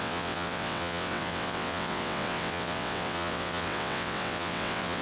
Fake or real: fake